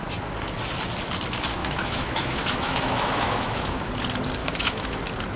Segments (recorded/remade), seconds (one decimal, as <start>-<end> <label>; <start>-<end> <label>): 0.0-1.6 recorded; 1.6-3.9 remade; 3.9-4.4 recorded; 4.4-5.0 remade; 5.0-5.4 recorded